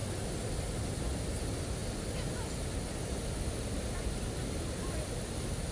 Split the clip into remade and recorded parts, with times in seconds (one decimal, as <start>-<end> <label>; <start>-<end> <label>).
0.0-5.7 recorded